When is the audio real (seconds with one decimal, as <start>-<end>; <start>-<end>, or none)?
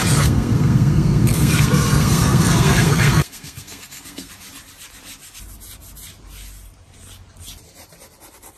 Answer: 4.3-8.6